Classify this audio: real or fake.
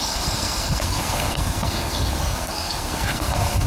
fake